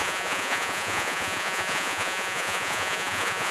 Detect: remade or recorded remade